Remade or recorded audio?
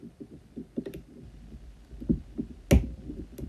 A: recorded